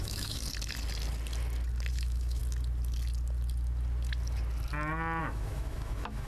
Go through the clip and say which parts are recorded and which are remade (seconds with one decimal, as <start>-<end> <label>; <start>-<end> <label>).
0.0-0.4 remade; 0.4-1.9 recorded; 1.9-2.4 remade; 2.4-5.2 recorded; 5.2-6.3 remade